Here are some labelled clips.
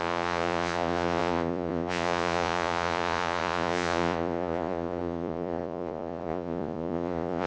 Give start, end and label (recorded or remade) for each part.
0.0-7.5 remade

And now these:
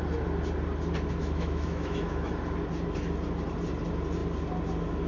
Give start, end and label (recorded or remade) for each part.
0.0-1.2 recorded; 1.2-2.3 remade; 2.3-5.1 recorded

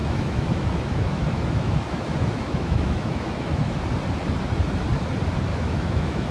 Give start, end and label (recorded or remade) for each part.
0.0-3.8 remade; 3.8-5.5 recorded; 5.5-6.3 remade

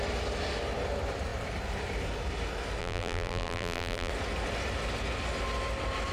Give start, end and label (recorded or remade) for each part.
0.0-2.8 recorded; 2.8-4.1 remade; 4.1-6.1 recorded

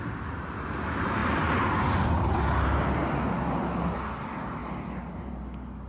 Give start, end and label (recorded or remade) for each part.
0.0-5.9 recorded